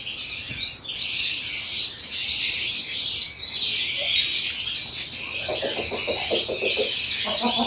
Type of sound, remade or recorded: recorded